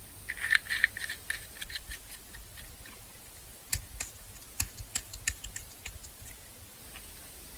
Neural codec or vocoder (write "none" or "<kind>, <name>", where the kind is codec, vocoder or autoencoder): none